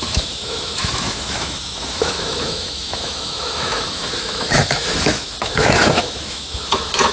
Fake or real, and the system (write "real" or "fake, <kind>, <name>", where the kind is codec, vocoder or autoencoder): fake, autoencoder, DAC-VAE